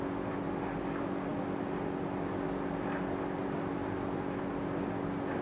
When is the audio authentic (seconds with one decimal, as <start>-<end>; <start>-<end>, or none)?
0.0-5.4

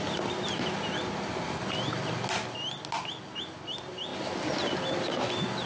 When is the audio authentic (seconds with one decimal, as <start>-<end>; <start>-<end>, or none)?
0.0-5.7

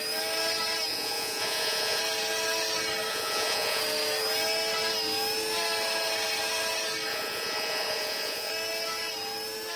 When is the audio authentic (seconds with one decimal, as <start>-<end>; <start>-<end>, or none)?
0.0-0.9; 2.0-3.1; 3.8-7.1; 8.5-9.8

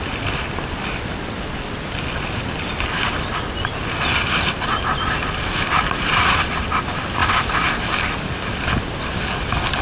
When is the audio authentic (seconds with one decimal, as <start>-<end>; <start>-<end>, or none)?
0.0-9.8